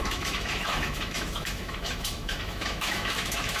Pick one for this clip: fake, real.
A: fake